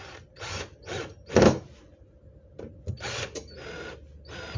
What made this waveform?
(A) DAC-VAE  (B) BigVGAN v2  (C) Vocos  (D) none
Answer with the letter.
D